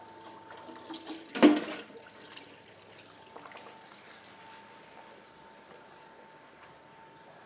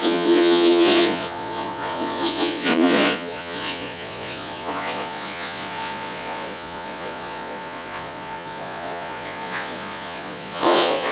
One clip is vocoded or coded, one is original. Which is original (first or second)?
first